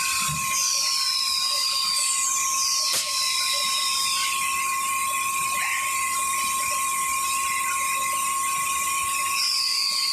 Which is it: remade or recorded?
recorded